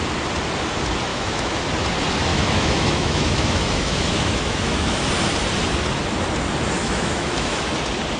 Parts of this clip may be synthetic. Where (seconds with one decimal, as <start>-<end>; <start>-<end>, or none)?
1.1-1.6; 2.3-5.1; 6.8-7.6